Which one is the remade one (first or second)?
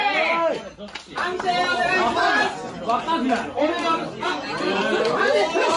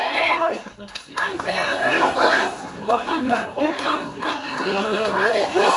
second